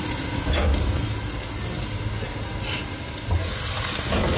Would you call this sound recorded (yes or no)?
yes